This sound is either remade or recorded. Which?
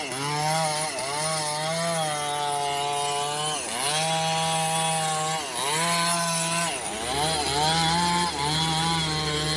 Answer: recorded